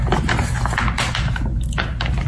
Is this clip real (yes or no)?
yes